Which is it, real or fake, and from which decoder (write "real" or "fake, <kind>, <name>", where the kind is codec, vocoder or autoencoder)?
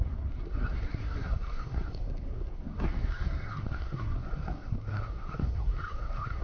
fake, codec, SNAC